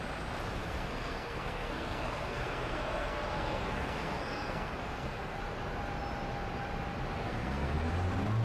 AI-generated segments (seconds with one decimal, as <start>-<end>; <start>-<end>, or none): 0.6-5.4; 7.2-7.9